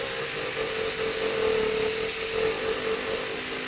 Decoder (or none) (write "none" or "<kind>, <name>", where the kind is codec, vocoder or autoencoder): none